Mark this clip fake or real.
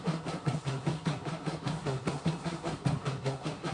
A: fake